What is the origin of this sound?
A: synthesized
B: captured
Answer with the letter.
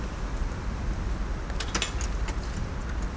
B